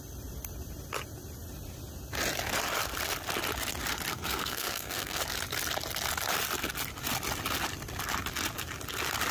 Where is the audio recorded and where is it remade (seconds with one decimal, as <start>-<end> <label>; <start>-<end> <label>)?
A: 0.0-4.1 recorded; 4.1-5.2 remade; 5.2-9.3 recorded